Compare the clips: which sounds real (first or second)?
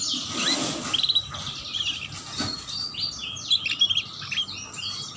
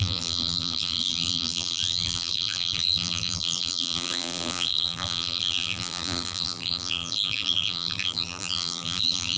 first